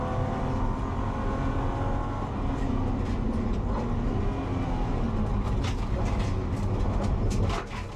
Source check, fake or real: real